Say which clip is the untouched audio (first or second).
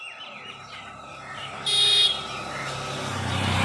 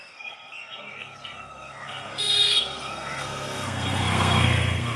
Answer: first